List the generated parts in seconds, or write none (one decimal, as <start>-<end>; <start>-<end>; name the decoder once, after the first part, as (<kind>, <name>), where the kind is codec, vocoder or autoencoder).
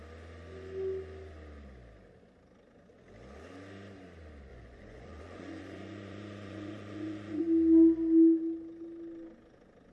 4.5-7.4 (vocoder, Vocos)